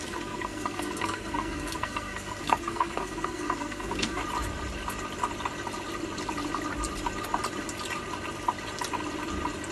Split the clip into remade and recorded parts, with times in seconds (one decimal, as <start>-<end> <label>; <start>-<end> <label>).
0.0-4.2 remade; 4.2-9.7 recorded